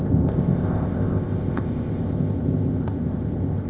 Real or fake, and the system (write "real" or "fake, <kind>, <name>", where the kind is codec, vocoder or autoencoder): fake, codec, ZipCodec